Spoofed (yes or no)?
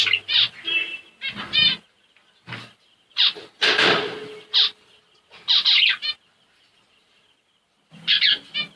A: no